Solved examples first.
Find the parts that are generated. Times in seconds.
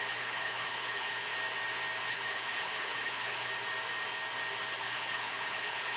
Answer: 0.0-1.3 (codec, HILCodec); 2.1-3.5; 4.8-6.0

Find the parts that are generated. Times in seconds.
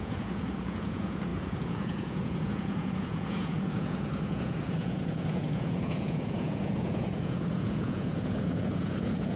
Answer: 0.0-9.4 (vocoder, Vocos)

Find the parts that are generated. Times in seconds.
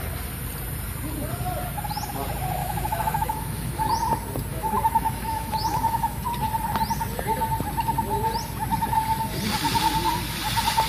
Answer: 2.6-3.9 (autoencoder, DAC-VAE); 4.5-6.2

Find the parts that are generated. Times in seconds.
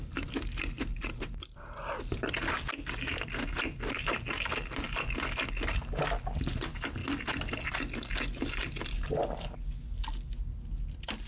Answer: none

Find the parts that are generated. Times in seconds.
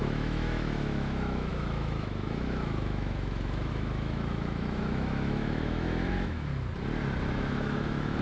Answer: 0.0-6.5 (autoencoder, DAC-VAE); 7.2-8.2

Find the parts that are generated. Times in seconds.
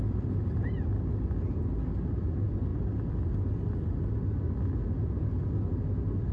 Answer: none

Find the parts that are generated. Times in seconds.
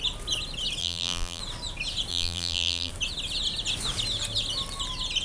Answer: 0.8-1.4 (vocoder, BigVGAN v2); 2.1-2.9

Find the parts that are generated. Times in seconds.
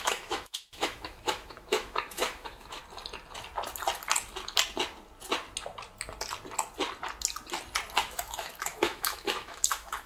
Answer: 0.0-2.8 (autoencoder, DAC-VAE); 8.0-10.1